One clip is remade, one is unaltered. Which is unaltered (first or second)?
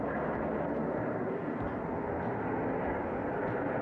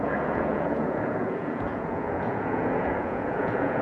first